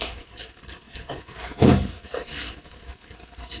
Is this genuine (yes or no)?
no